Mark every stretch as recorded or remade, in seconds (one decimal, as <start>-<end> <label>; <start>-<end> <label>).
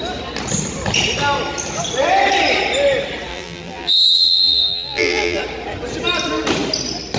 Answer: 0.0-3.3 recorded; 3.3-5.4 remade; 5.4-7.2 recorded